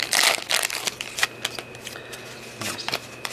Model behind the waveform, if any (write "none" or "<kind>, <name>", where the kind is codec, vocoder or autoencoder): none